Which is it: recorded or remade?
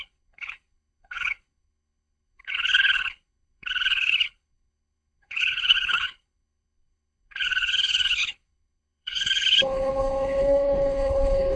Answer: remade